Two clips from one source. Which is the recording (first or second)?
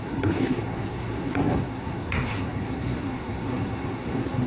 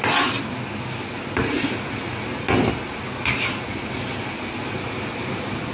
second